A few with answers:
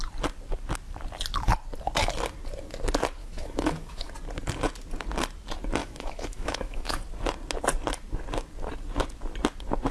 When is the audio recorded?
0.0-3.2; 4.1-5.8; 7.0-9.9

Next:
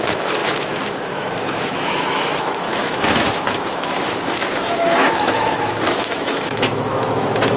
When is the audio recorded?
none

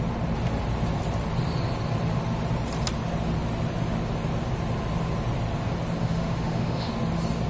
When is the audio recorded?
0.0-6.0; 6.9-7.5

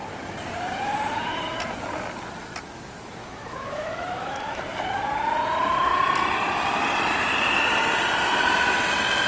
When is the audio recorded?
0.0-3.2; 4.6-9.3

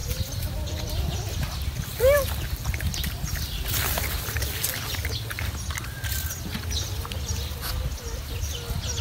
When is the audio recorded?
0.0-9.0

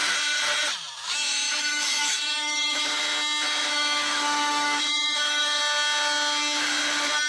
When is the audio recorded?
0.0-1.0; 3.0-3.6; 5.6-7.3

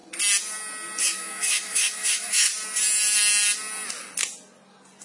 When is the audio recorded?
0.0-1.0; 2.5-5.0

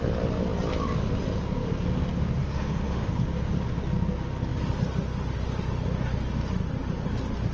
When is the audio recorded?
0.0-2.4; 3.1-7.5